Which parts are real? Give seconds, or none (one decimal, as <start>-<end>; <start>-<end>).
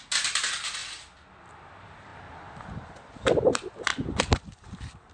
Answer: 0.0-5.1